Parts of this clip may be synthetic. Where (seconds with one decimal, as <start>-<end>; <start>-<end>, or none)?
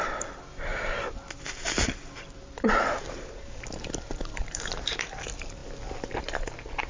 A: 0.7-4.8